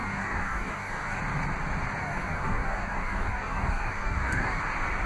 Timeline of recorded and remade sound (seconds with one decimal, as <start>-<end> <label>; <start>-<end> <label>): 0.0-1.2 remade; 1.2-2.0 recorded; 2.0-4.6 remade; 4.6-5.1 recorded